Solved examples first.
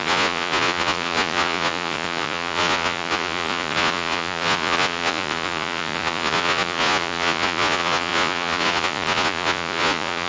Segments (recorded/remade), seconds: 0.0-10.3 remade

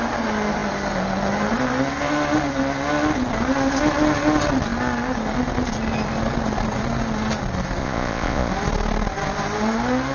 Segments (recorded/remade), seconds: 0.0-7.8 recorded; 7.8-8.5 remade; 8.5-10.1 recorded

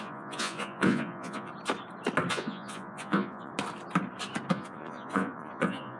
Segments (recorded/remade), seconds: 0.0-1.5 remade; 1.5-2.3 recorded; 2.3-3.5 remade; 3.5-4.5 recorded; 4.5-6.0 remade